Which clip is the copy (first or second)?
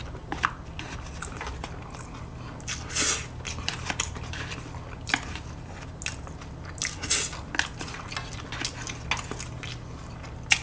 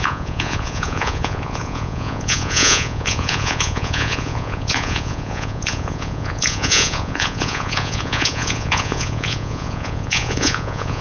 second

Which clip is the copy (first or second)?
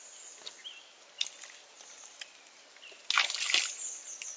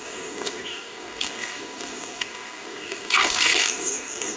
second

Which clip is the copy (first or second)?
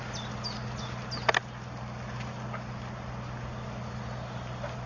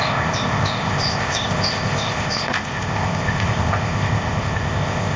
second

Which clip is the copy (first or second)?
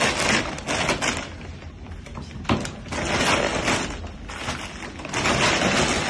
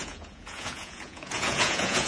second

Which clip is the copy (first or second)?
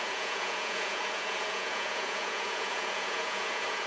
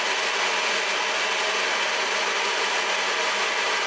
first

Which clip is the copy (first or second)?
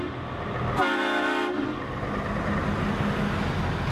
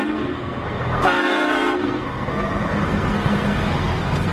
second